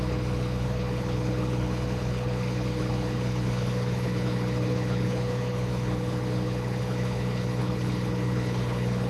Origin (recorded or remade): remade